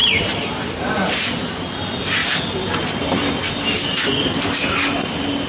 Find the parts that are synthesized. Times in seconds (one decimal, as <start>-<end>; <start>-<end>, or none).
0.0-1.1